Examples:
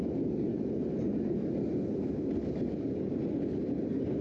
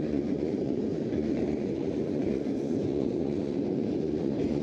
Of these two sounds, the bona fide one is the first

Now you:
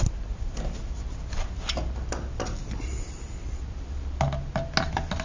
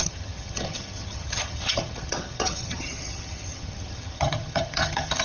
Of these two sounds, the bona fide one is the first